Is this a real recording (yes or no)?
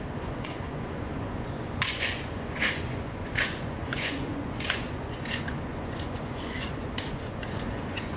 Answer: no